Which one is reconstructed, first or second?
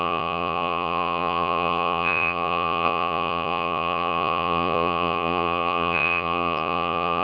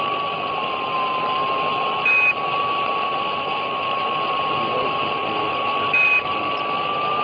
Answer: first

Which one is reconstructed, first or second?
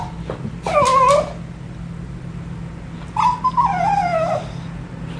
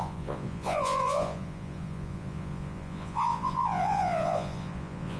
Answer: second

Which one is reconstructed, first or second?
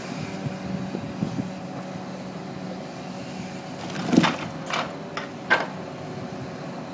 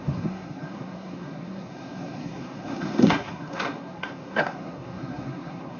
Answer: second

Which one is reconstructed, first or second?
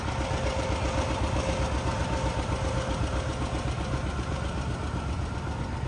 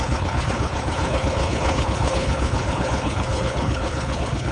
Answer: second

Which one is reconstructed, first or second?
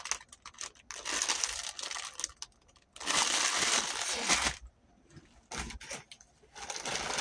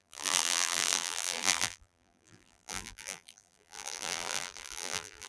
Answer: second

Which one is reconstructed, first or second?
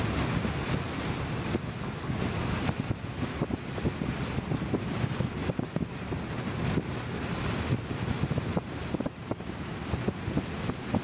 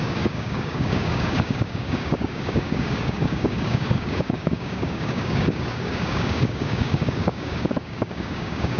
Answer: second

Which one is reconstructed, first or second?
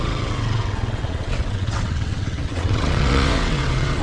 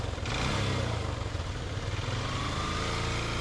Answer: first